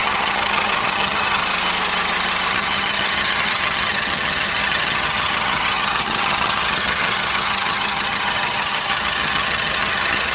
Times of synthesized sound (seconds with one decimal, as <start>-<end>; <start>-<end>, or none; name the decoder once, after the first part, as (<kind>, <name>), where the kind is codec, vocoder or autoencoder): 0.0-1.4 (vocoder, HiFi-GAN); 2.5-10.3